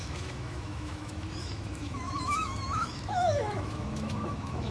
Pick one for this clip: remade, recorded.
remade